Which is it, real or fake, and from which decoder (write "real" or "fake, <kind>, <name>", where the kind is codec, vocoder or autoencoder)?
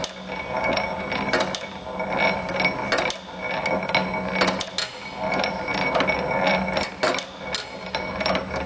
real